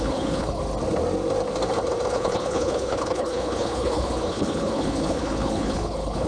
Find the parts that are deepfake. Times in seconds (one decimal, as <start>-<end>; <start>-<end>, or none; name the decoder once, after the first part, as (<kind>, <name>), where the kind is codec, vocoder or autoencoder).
0.0-0.6 (codec, HILCodec); 2.1-6.3